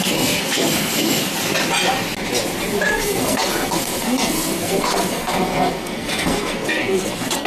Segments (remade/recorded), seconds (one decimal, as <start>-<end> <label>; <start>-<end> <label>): 0.0-1.3 remade; 1.3-2.8 recorded; 2.8-7.5 remade